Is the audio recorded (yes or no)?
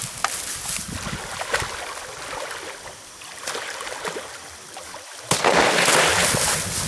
yes